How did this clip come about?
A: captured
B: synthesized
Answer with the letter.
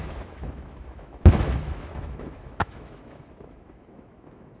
B